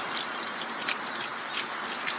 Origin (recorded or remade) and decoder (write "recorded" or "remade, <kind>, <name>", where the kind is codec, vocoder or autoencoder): recorded